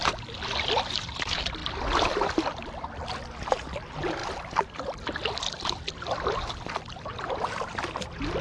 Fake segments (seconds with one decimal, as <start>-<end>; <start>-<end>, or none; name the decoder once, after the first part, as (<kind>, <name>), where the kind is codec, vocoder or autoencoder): 1.6-3.1 (vocoder, BigVGAN v2)